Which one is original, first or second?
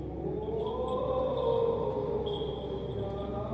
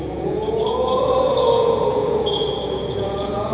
first